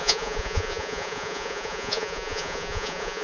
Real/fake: fake